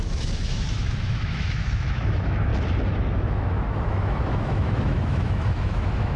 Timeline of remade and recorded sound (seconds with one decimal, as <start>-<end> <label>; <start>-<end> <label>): 0.0-2.5 remade; 2.5-3.3 recorded; 3.3-6.2 remade